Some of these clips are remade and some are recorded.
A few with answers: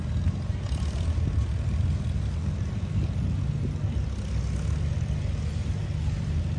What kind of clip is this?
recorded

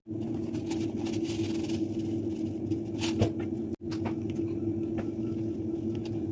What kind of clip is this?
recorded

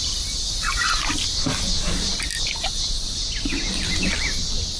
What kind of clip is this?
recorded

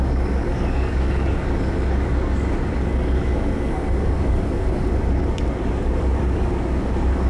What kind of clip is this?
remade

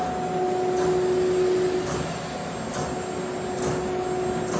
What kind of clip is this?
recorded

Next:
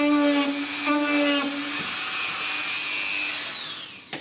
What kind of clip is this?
recorded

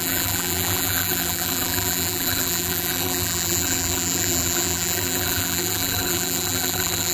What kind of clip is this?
remade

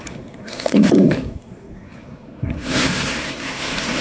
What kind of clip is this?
remade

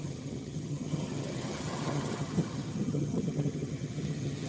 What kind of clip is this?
remade